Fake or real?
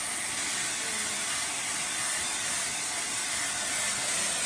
real